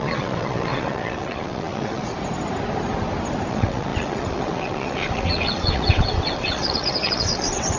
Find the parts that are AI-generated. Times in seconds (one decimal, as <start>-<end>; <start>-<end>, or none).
0.0-2.1; 3.5-7.8